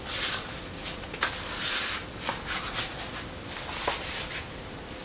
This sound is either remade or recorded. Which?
recorded